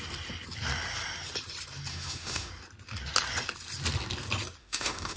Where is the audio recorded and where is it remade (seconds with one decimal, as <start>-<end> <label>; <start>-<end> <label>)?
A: 0.0-1.9 recorded; 1.9-2.5 remade; 2.5-4.6 recorded; 4.6-5.2 remade